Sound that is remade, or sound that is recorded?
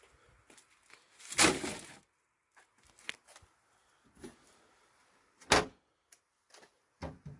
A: recorded